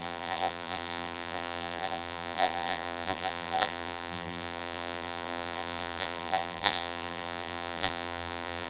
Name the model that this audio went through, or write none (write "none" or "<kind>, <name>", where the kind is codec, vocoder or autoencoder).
vocoder, BigVGAN v2